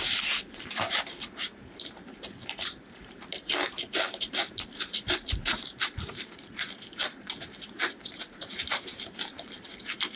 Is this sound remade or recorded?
remade